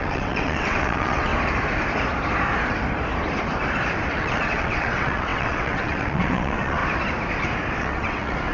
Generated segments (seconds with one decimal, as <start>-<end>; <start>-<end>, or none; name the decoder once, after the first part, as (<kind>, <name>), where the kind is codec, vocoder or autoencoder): 0.0-1.3 (vocoder, WaveNeXt); 4.1-6.8; 7.8-8.5